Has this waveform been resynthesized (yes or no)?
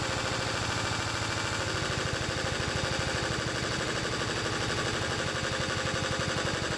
no